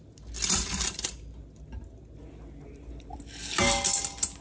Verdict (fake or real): real